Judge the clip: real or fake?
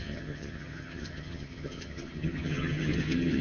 fake